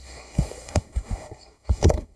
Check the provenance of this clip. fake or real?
fake